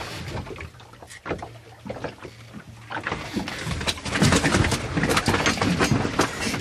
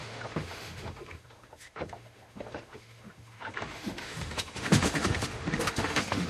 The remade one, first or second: second